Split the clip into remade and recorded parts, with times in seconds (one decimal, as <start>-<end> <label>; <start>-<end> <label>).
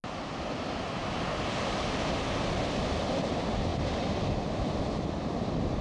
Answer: 0.0-5.8 recorded